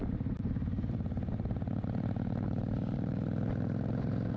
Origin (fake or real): fake